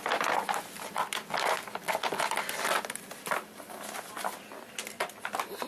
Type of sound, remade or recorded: recorded